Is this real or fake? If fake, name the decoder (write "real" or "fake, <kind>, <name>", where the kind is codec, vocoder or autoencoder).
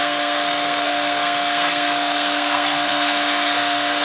fake, codec, SNAC